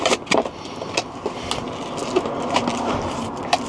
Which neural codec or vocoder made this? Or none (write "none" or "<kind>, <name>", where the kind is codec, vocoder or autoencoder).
none